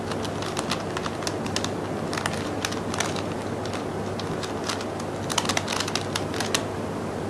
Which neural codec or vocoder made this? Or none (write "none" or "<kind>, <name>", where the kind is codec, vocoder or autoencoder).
none